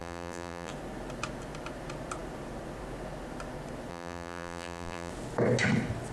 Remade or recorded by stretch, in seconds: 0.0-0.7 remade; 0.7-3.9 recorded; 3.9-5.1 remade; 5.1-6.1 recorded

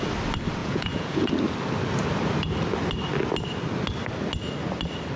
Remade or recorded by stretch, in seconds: 0.0-0.6 recorded; 0.6-1.3 remade; 1.3-5.2 recorded

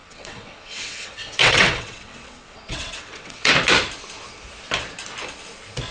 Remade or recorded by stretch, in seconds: 0.0-3.5 remade; 3.5-5.9 recorded

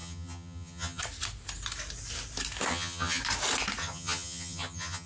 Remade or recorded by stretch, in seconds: 0.0-1.0 remade; 1.0-2.7 recorded; 2.7-3.2 remade; 3.2-3.8 recorded; 3.8-5.1 remade